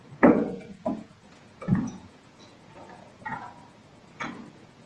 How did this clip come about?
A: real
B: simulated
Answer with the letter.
B